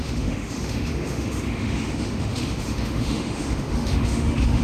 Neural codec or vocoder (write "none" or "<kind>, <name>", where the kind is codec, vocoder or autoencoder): autoencoder, DAC-VAE